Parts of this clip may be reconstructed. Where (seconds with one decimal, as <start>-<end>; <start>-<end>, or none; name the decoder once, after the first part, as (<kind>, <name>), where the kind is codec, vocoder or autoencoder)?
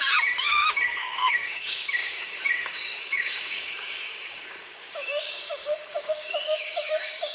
0.0-7.3 (codec, DAC)